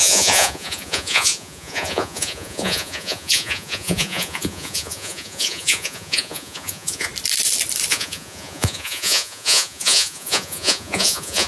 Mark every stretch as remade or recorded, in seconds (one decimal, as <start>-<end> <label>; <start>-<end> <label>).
0.0-7.1 remade; 7.1-7.9 recorded; 7.9-11.5 remade